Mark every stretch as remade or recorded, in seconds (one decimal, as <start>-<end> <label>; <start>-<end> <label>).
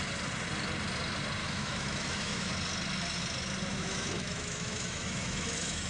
0.0-1.4 recorded; 1.4-2.5 remade; 2.5-3.7 recorded; 3.7-5.9 remade